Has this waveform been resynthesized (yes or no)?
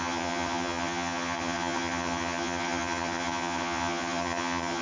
yes